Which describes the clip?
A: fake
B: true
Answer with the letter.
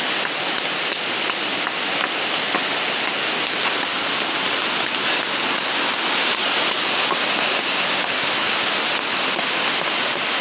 B